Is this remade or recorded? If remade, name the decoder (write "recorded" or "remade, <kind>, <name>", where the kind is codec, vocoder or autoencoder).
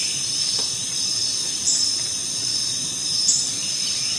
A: remade, vocoder, BigVGAN v2